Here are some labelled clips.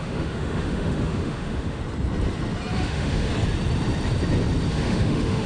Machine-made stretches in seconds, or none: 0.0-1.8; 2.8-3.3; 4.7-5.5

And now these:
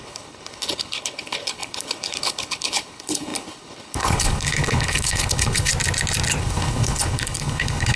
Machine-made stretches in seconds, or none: 0.0-5.7; 6.4-8.0

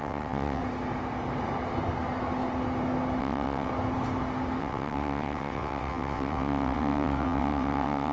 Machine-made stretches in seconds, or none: 0.0-0.6; 3.2-3.7; 4.6-8.1

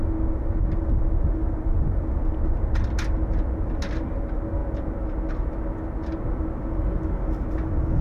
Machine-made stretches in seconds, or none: none

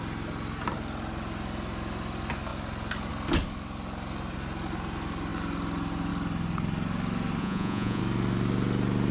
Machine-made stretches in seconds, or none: 7.4-8.0

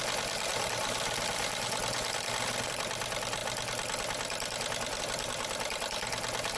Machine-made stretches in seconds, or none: none